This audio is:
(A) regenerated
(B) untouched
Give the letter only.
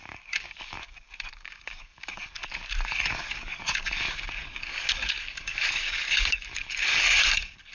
A